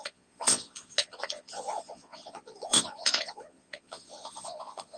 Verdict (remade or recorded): remade